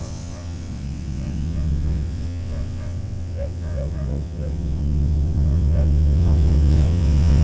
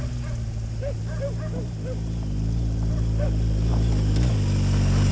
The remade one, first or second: first